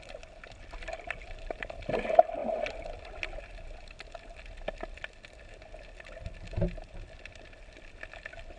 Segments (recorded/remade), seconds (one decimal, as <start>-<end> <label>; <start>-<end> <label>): 0.0-8.6 recorded